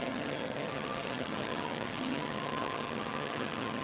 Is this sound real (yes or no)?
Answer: no